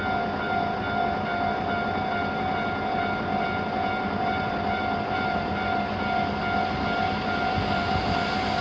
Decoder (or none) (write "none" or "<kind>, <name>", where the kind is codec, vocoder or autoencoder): none